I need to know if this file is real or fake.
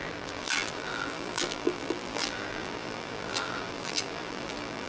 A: fake